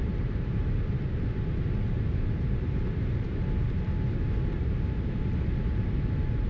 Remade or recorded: remade